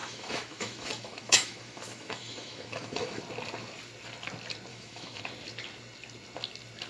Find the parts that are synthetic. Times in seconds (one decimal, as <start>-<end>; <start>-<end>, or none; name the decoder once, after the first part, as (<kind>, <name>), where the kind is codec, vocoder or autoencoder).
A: 0.0-3.2 (autoencoder, DAC-VAE); 4.7-5.2